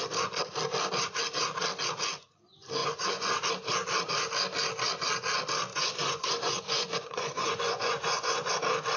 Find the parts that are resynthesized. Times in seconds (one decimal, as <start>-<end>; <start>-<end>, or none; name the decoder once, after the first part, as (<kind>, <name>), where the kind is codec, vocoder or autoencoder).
2.8-3.4 (vocoder, Vocos); 5.7-8.5